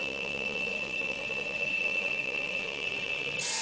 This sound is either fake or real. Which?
fake